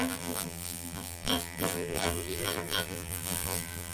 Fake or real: fake